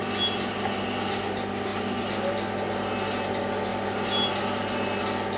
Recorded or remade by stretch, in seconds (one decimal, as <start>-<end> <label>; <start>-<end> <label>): 0.0-5.4 recorded